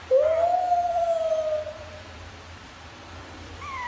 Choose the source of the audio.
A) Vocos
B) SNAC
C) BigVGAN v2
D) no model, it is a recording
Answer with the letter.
C